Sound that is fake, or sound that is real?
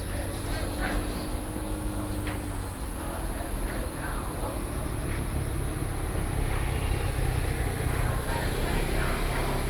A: real